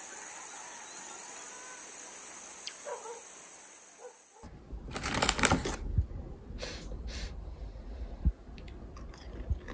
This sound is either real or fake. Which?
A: real